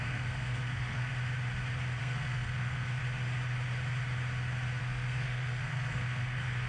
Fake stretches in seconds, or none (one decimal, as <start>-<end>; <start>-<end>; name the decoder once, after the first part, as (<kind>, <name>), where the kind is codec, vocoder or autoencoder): 0.0-1.1 (codec, SNAC); 2.0-3.0; 4.8-6.7

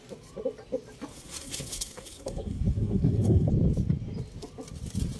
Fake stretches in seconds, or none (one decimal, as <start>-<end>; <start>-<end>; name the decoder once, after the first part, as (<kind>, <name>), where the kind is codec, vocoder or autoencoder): 1.1-3.5 (codec, SNAC)

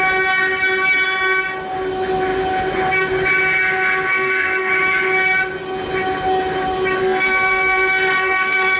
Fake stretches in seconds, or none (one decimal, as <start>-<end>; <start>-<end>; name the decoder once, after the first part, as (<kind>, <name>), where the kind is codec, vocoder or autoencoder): 4.1-4.7 (codec, SNAC); 7.0-8.8

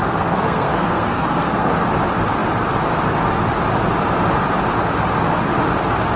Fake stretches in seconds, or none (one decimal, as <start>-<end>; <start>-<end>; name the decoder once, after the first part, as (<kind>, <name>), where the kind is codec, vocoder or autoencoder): 0.0-1.7 (codec, SNAC)

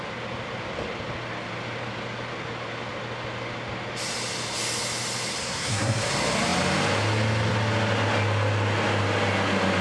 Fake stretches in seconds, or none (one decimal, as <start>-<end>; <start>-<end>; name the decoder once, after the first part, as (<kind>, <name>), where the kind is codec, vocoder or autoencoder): 5.4-6.1 (codec, SNAC)

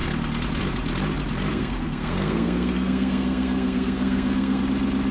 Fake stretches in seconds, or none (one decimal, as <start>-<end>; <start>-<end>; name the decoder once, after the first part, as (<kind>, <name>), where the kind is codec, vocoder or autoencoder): 1.5-4.6 (codec, SNAC)

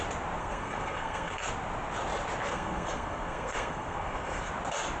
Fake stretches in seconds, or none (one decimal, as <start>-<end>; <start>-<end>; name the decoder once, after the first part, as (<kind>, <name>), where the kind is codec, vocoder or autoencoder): 0.4-1.5 (codec, SNAC); 2.5-4.5